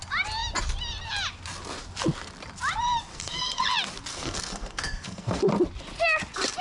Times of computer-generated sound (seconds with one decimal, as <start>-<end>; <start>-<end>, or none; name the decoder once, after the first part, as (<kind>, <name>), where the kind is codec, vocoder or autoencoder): 3.1-3.6 (codec, SNAC); 4.1-5.4